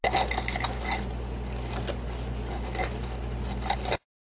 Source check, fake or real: real